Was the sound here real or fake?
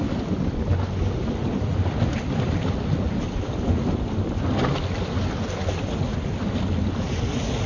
real